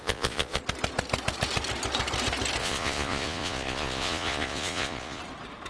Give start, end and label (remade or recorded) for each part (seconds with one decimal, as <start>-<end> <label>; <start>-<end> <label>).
0.0-0.6 remade; 0.6-2.6 recorded; 2.6-5.2 remade; 5.2-5.7 recorded

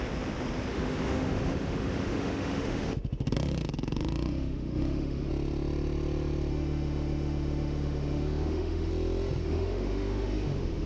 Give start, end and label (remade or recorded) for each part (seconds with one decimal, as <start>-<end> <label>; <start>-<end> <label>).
0.0-0.7 recorded; 0.7-5.3 remade; 5.3-6.5 recorded; 6.5-8.9 remade; 8.9-9.4 recorded; 9.4-10.9 remade

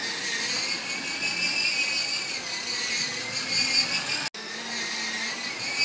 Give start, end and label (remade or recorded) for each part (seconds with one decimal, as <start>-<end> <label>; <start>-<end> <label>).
0.0-5.8 recorded

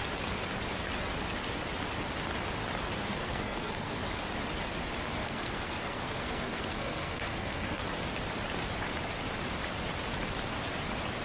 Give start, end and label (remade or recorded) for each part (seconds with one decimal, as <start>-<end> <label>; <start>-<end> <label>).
0.0-3.1 recorded; 3.1-4.0 remade; 4.0-5.2 recorded; 5.2-7.8 remade; 7.8-11.2 recorded

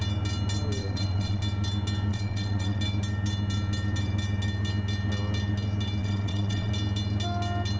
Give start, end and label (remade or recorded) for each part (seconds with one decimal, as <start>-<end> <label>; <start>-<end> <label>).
0.0-0.8 recorded; 0.8-1.4 remade; 1.4-2.1 recorded; 2.1-2.8 remade; 2.8-6.0 recorded; 6.0-6.7 remade; 6.7-7.8 recorded

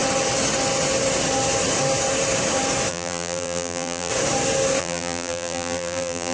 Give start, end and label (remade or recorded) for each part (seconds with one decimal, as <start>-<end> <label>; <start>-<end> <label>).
0.0-2.9 recorded; 2.9-4.1 remade; 4.1-4.8 recorded; 4.8-6.3 remade

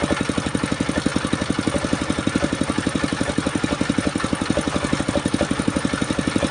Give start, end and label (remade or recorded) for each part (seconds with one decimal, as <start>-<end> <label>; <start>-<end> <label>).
0.0-6.5 recorded

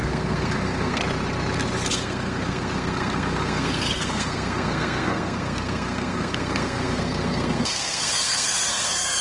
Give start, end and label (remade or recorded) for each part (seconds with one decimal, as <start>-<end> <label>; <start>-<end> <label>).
0.0-1.0 remade; 1.0-1.9 recorded; 1.9-9.2 remade